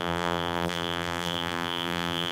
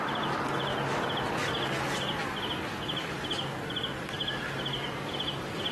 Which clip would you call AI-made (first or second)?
first